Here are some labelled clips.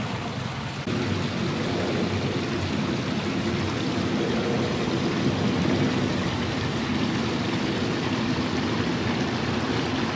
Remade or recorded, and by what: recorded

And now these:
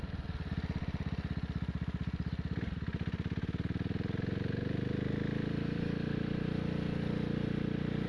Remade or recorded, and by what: recorded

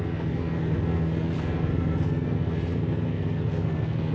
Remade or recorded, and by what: remade, codec, SNAC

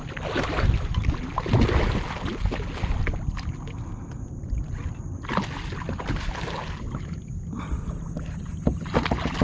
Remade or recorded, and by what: recorded